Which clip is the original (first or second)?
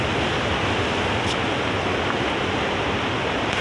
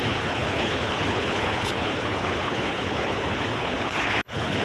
first